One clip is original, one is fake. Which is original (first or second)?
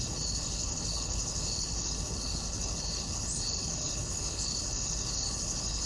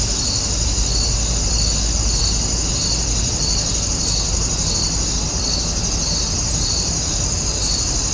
second